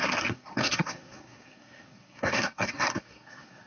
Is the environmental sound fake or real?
fake